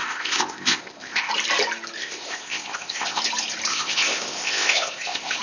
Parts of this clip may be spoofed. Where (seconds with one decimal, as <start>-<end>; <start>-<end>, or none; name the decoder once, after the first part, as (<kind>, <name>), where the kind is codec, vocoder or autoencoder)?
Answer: 0.0-1.3 (codec, ZipCodec); 2.0-3.2; 3.7-5.4